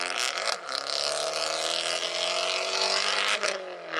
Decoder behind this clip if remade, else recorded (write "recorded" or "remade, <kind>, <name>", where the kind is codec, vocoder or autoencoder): recorded